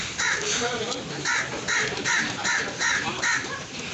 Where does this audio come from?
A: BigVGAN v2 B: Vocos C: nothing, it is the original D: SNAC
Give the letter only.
C